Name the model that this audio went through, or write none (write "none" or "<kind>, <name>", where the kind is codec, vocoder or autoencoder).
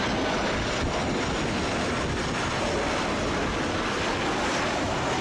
none